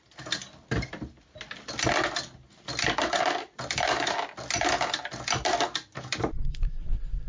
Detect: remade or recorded recorded